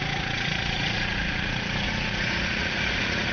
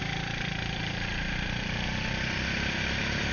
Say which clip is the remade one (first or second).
first